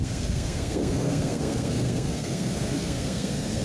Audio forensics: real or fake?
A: fake